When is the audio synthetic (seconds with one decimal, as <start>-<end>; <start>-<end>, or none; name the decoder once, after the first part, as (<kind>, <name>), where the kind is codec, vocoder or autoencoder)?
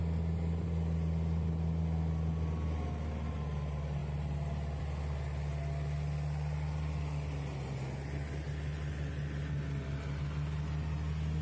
none